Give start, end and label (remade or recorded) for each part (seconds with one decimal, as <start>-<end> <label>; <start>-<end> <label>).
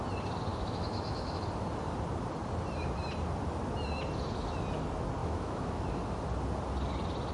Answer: 0.0-0.5 recorded; 0.5-1.4 remade; 1.4-5.2 recorded; 5.2-5.8 remade; 5.8-7.3 recorded